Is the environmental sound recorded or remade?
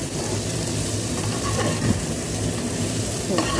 remade